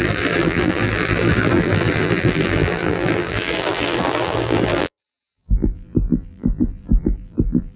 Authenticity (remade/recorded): remade